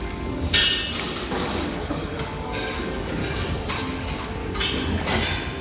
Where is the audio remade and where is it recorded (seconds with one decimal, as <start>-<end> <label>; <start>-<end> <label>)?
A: 0.0-0.5 remade; 0.5-1.4 recorded; 1.4-3.2 remade; 3.2-3.7 recorded; 3.7-4.4 remade; 4.4-5.6 recorded